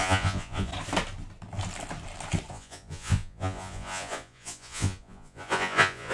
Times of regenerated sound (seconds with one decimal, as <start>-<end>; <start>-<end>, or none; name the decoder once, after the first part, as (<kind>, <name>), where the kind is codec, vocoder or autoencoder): 0.0-0.7 (vocoder, Vocos); 2.5-6.1